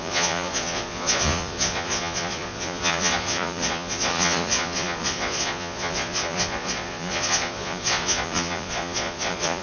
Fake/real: fake